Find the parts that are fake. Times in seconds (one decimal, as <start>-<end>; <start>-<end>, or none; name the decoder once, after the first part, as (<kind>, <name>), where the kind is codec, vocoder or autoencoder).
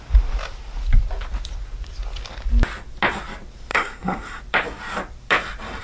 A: 3.7-4.4 (codec, SNAC)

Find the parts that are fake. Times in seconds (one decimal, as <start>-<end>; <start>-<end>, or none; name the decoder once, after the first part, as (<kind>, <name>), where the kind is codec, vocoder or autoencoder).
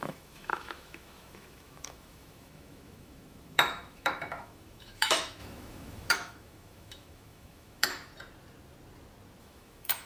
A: 0.0-8.1 (autoencoder, DAC-VAE); 9.4-10.1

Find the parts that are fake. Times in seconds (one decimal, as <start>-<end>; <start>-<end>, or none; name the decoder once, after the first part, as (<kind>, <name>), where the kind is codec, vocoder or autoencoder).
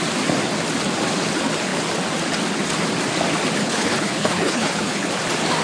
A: 3.6-5.1 (codec, HILCodec)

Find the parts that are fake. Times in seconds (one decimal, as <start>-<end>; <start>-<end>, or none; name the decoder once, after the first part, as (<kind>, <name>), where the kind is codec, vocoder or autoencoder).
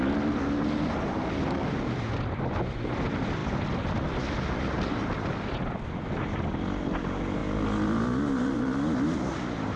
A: 7.4-8.0 (vocoder, BigVGAN v2)